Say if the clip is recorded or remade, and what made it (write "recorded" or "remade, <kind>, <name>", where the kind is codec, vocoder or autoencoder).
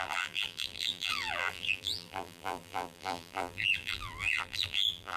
remade, vocoder, BigVGAN v2